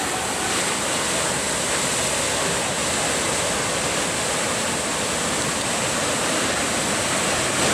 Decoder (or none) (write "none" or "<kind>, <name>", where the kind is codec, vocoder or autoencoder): none